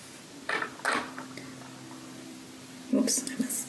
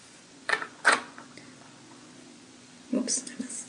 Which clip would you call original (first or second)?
first